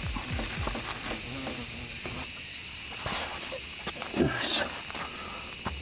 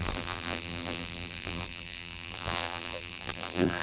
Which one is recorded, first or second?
first